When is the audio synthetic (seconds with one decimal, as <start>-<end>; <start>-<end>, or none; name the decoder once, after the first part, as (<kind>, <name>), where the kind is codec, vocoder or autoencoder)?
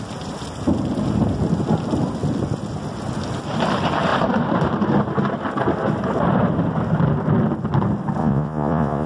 8.2-9.1 (vocoder, Vocos)